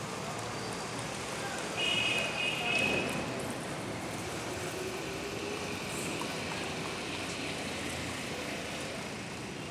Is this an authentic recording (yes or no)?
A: no